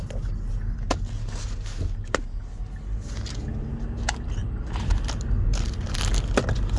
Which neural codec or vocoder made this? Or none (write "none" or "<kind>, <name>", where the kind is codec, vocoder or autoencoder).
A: none